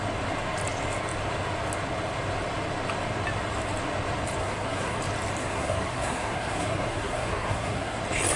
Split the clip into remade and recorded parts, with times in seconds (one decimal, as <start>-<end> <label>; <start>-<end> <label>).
0.0-4.4 recorded; 4.4-5.0 remade; 5.0-5.4 recorded; 5.4-8.0 remade; 8.0-8.4 recorded